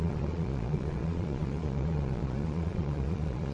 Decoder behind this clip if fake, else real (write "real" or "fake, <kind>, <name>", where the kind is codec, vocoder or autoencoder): fake, vocoder, Vocos